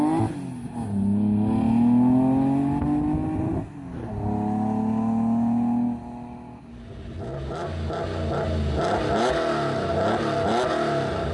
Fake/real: real